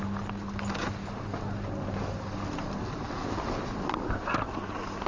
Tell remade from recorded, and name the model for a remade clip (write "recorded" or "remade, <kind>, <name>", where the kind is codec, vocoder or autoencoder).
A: recorded